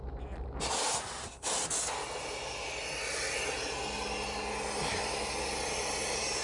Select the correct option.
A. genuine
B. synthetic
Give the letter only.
A